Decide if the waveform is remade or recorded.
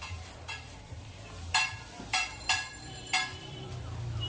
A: remade